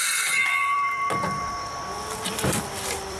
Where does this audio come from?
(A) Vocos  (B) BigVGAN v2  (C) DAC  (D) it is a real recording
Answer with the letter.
B